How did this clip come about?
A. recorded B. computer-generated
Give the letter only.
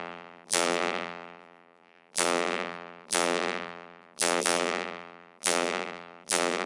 B